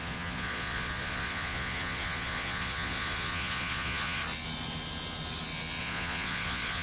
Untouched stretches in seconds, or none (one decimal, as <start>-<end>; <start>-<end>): 4.2-5.8

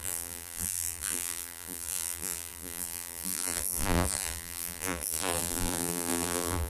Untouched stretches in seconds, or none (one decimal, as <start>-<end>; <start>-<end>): none

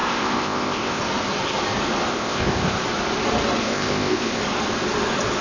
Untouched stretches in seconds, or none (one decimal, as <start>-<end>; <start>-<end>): 1.0-2.1; 2.8-3.6; 4.4-5.4

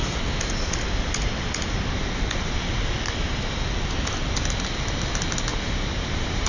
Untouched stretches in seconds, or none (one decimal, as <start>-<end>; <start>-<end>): 0.0-5.5

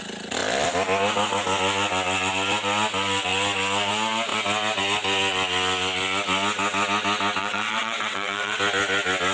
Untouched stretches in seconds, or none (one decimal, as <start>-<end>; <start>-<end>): 0.0-7.4; 8.6-9.3

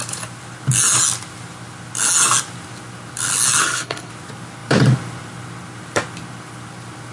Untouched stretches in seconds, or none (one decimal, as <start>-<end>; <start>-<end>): 0.0-3.6; 4.1-7.1

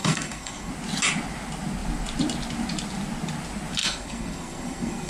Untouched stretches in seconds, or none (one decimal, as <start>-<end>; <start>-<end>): 0.7-3.8

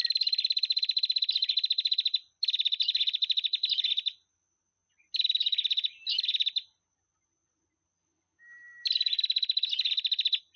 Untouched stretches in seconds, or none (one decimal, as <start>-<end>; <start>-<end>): 0.0-10.6